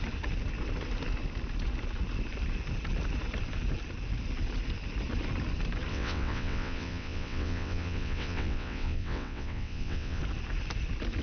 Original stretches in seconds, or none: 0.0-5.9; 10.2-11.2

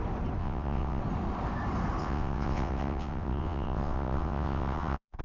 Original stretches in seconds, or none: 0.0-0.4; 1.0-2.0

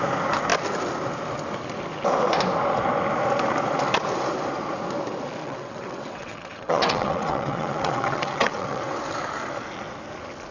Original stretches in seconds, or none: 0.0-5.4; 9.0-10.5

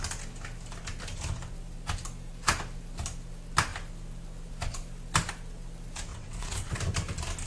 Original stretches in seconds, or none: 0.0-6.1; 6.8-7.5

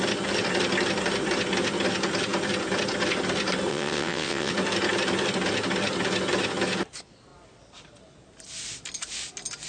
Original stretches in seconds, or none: 0.0-3.7; 4.5-9.7

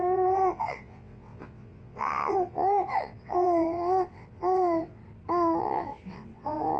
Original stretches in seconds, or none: 5.0-5.6